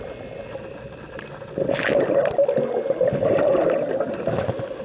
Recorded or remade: recorded